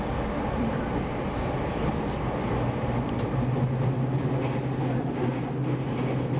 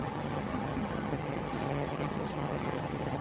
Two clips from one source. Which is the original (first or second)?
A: first